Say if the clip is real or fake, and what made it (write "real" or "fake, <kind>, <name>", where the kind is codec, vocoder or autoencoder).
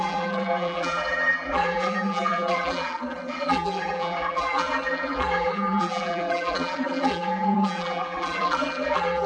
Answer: fake, vocoder, BigVGAN v2